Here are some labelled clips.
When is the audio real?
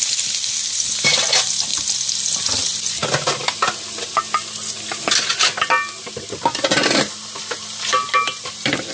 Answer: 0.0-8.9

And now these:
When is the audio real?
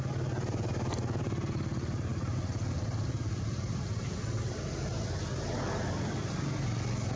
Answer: 0.0-7.2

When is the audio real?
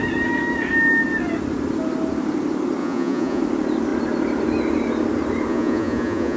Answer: 0.0-2.8; 3.4-5.5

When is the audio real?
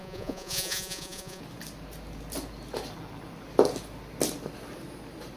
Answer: 1.4-5.4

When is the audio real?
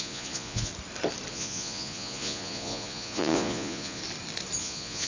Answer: 0.7-1.3; 4.0-4.6